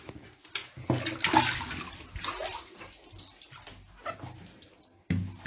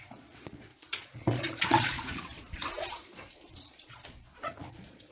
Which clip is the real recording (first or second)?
first